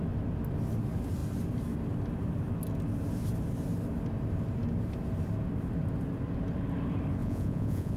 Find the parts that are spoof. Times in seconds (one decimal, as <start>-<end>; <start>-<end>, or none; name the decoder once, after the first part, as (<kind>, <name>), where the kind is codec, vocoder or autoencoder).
7.2-8.0 (vocoder, Vocos)